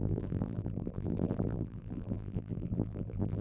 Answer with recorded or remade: remade